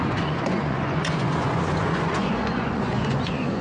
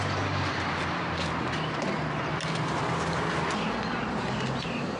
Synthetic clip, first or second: first